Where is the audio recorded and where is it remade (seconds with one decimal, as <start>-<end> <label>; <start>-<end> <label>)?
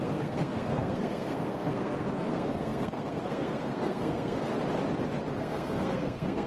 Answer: 0.0-4.5 remade; 4.5-5.4 recorded; 5.4-6.5 remade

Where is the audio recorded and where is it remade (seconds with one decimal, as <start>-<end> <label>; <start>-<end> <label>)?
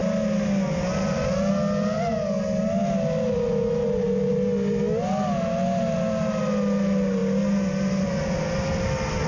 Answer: 0.0-9.3 recorded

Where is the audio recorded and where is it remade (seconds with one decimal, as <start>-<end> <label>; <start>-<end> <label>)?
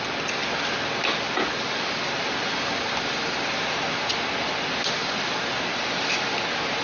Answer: 0.0-6.8 recorded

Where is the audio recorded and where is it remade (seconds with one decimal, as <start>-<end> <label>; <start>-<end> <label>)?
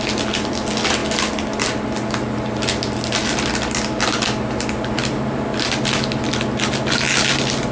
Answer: 0.0-7.7 recorded